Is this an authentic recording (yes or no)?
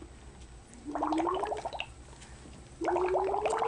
yes